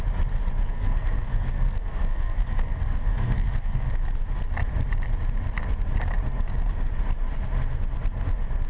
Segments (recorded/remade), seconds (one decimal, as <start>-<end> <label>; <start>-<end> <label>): 0.0-0.6 recorded; 0.6-3.9 remade; 3.9-8.7 recorded